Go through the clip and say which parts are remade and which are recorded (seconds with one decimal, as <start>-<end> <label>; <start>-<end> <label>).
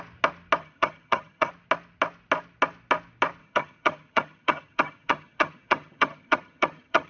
0.0-0.6 recorded; 0.6-1.5 remade; 1.5-3.4 recorded; 3.4-7.1 remade